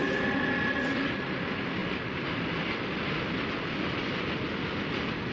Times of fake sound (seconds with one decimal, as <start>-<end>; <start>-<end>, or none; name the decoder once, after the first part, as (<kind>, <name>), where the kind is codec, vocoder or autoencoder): none